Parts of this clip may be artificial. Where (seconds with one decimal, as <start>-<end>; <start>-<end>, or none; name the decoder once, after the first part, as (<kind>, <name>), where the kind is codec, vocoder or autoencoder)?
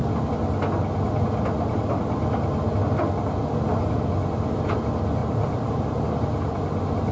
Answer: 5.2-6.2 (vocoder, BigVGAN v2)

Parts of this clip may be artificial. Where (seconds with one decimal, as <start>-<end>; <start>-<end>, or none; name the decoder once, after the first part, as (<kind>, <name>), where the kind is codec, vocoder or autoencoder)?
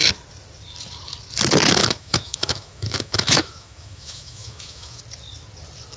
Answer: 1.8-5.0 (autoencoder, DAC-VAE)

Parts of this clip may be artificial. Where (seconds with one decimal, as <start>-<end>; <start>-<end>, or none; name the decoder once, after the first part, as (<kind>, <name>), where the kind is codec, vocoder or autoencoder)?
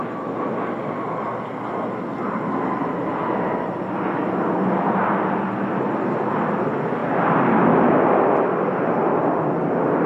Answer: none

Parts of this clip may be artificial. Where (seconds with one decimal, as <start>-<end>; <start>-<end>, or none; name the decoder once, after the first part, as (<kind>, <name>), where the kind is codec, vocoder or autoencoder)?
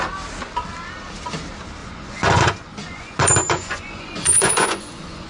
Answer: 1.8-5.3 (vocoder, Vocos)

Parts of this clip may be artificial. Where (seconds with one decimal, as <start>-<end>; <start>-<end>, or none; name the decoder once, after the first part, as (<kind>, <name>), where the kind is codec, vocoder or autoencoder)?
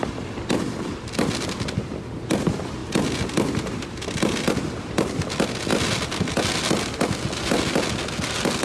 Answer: none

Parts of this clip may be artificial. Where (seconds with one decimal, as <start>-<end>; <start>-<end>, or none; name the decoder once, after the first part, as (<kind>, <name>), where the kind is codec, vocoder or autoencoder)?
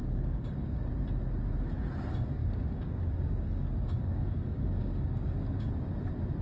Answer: 0.0-0.9 (codec, DAC); 2.4-5.7